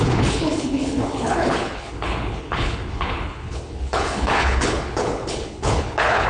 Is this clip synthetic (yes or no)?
yes